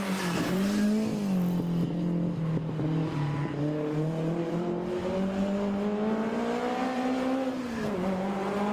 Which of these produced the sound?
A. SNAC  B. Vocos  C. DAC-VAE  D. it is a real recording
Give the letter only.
D